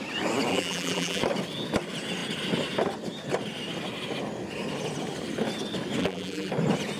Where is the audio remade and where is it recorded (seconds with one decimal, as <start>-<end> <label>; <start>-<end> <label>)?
0.0-0.5 recorded; 0.5-1.2 remade; 1.2-6.0 recorded; 6.0-6.5 remade; 6.5-7.0 recorded